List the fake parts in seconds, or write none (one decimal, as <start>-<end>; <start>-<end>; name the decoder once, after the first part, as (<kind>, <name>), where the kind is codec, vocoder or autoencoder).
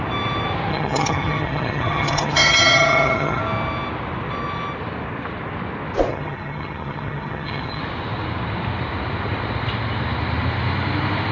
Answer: 0.7-3.4 (vocoder, HiFi-GAN); 6.1-7.8